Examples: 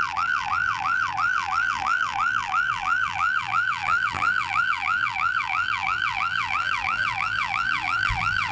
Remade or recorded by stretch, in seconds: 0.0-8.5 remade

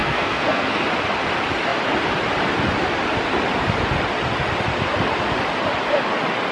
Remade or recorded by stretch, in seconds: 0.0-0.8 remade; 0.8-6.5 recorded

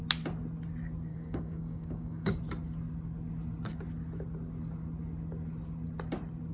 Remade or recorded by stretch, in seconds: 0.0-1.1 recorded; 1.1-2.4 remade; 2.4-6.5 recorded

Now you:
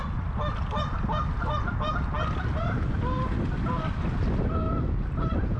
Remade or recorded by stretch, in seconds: 0.0-5.6 recorded

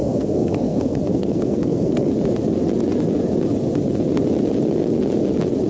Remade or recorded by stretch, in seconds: 0.0-2.1 remade; 2.1-5.7 recorded

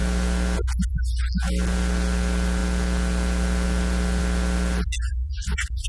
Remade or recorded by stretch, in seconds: 0.0-5.1 recorded; 5.1-5.9 remade

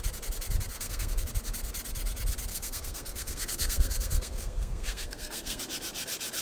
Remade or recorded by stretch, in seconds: 0.0-0.7 recorded; 0.7-1.3 remade; 1.3-2.5 recorded; 2.5-5.6 remade; 5.6-6.4 recorded

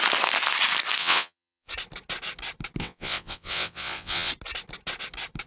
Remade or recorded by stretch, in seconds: 0.0-1.0 recorded; 1.0-1.7 remade; 1.7-2.8 recorded; 2.8-4.3 remade; 4.3-5.5 recorded